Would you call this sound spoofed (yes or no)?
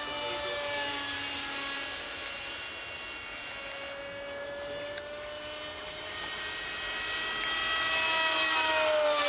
no